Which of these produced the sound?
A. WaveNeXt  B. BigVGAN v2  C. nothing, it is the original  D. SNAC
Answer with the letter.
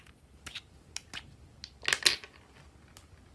C